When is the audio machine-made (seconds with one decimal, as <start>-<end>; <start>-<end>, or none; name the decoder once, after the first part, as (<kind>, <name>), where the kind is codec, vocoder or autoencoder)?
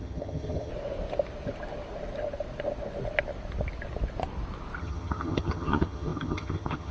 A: 0.0-0.7 (vocoder, HiFi-GAN); 4.8-6.9